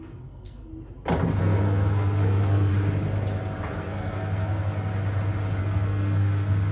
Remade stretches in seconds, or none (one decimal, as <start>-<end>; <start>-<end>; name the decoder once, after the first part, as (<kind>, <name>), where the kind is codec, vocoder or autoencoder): 0.0-0.7 (codec, SNAC); 1.4-2.7; 3.7-4.9; 5.6-6.7